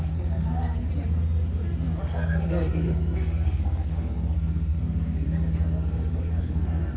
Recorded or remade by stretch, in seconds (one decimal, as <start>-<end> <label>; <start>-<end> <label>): 0.0-0.8 remade; 0.8-2.0 recorded; 2.0-7.0 remade